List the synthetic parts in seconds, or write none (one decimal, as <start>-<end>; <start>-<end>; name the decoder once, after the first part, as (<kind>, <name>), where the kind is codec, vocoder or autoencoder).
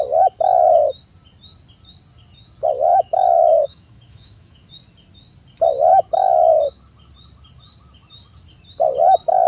2.9-4.7 (autoencoder, DAC-VAE); 5.9-6.8